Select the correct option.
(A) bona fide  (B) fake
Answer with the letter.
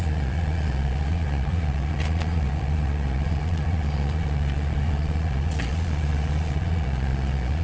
B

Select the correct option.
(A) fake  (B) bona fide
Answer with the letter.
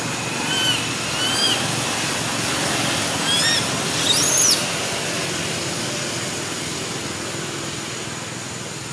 B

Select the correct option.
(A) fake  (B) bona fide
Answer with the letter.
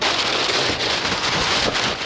A